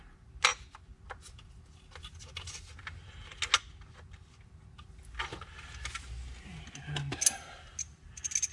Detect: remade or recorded recorded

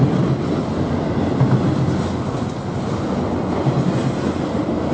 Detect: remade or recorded recorded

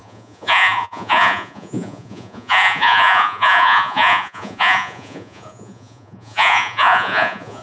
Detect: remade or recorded remade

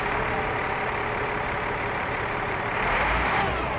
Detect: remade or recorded remade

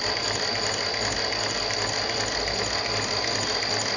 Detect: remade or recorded recorded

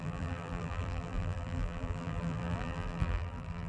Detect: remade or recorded remade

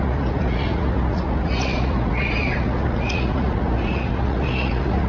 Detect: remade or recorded remade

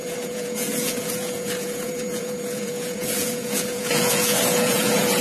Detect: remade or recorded remade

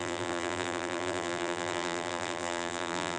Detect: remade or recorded remade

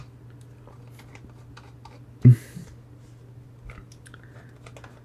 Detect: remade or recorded recorded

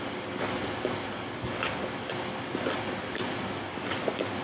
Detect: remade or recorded recorded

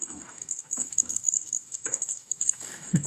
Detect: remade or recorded remade